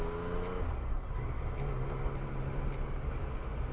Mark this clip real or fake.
real